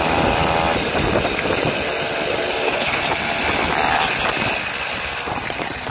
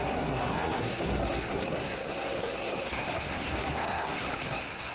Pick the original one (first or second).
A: first